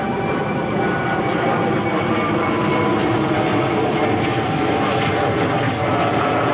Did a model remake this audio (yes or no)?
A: no